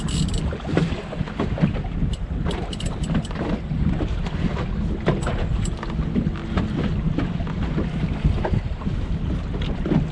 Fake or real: real